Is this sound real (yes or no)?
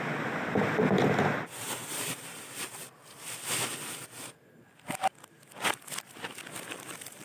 yes